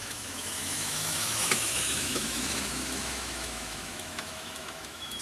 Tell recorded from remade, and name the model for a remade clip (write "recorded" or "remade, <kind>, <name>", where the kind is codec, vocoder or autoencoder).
remade, autoencoder, DAC-VAE